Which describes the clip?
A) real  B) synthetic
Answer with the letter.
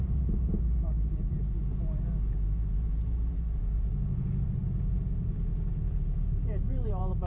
B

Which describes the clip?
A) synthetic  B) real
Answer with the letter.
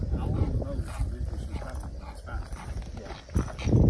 B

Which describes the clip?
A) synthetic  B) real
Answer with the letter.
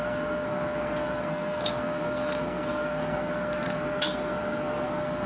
A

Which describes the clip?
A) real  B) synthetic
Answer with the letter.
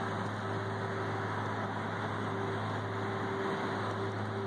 A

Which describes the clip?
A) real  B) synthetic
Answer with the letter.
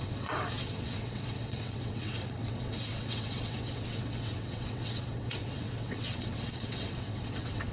B